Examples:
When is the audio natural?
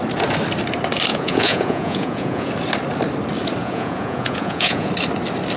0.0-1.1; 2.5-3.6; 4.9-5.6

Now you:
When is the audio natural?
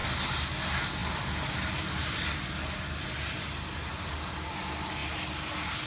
0.0-5.9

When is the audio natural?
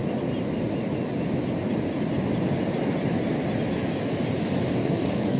0.0-4.8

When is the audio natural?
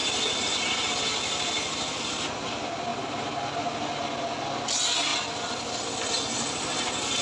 0.0-7.2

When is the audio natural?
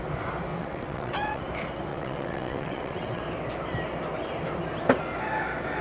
0.0-0.5; 1.4-1.9; 3.2-5.8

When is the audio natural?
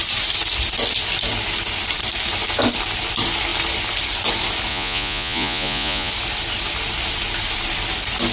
0.0-4.7; 6.1-8.3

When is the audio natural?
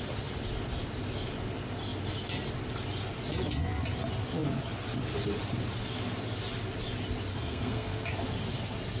0.0-7.3; 8.0-9.0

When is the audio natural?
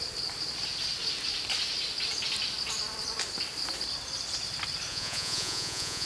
0.0-4.9